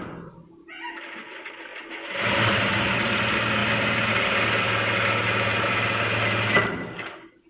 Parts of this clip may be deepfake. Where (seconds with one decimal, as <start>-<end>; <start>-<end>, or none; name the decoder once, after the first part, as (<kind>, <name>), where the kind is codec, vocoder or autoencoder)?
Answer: none